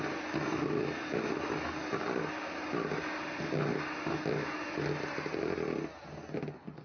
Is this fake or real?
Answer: real